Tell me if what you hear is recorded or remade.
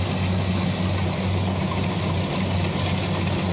recorded